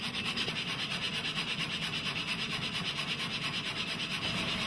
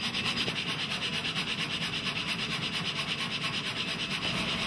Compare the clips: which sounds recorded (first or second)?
second